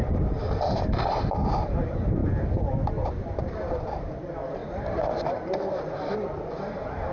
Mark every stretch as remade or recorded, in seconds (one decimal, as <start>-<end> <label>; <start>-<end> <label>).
0.0-7.1 remade